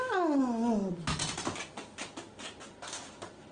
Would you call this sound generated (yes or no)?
no